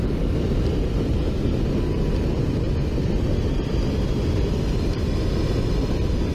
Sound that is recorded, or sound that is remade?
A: recorded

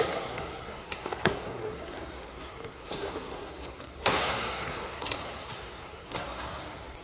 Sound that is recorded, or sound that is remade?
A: remade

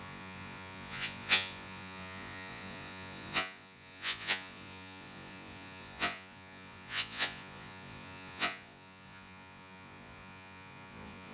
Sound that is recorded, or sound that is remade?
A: remade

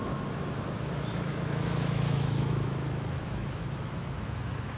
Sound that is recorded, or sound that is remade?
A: remade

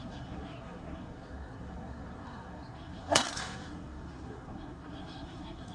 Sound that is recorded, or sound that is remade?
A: remade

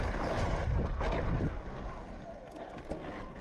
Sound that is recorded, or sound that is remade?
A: recorded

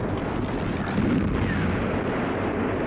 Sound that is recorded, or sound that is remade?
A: recorded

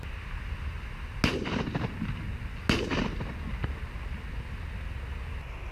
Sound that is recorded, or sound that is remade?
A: recorded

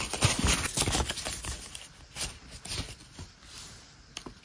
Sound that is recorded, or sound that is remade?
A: recorded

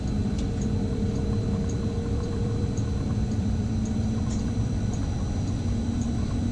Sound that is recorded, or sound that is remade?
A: remade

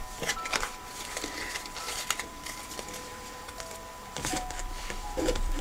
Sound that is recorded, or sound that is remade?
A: remade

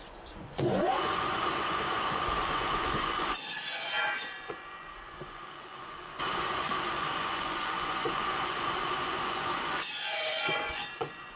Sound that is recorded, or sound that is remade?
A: remade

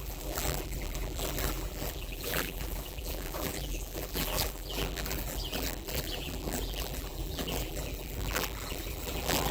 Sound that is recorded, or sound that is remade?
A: remade